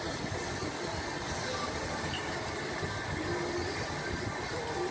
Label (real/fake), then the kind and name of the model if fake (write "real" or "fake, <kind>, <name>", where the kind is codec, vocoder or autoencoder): real